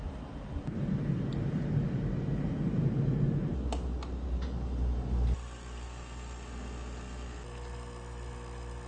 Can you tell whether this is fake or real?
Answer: real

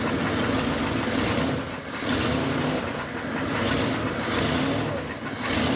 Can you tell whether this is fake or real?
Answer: real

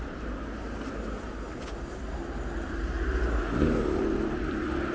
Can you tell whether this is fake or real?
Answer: real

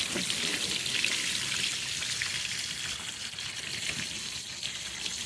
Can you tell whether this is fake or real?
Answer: real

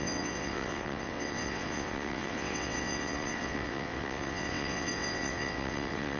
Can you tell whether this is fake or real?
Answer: fake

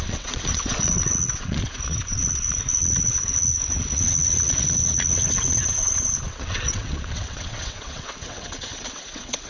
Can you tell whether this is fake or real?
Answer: fake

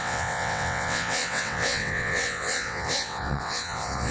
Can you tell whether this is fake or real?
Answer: fake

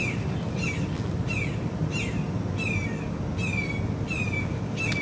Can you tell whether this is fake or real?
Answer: real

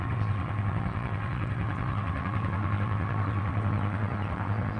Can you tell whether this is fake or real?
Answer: fake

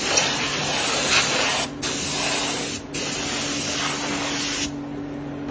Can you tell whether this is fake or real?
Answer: real